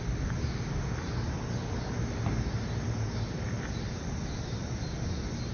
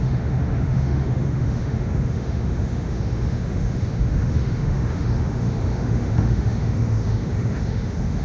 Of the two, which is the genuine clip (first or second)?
first